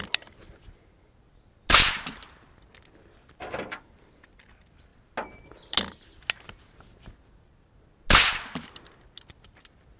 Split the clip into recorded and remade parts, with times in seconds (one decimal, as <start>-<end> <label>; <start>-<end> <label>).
0.0-10.0 recorded